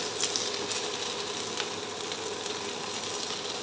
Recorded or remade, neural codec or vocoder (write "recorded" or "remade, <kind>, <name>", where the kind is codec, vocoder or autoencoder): recorded